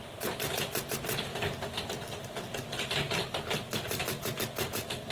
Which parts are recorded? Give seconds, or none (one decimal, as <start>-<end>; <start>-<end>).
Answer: 0.0-5.1